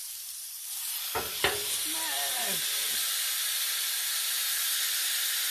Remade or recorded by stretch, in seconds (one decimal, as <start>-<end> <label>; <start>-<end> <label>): 0.0-2.9 recorded; 2.9-4.7 remade; 4.7-5.5 recorded